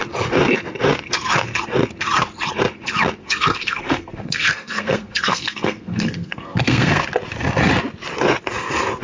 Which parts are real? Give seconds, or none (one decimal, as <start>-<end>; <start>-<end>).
0.0-3.2; 7.0-9.0